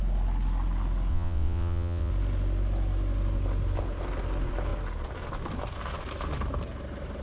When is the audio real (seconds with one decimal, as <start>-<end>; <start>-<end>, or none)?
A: 0.0-1.1; 2.1-7.2